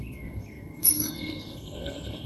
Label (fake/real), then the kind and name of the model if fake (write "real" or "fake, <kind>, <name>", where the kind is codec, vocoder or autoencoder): fake, codec, SNAC